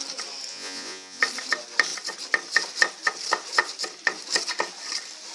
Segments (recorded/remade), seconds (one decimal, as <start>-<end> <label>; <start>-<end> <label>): 0.0-0.5 recorded; 0.5-1.2 remade; 1.2-5.3 recorded